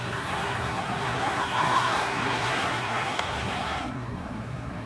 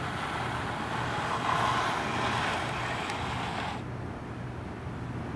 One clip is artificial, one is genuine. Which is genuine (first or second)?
second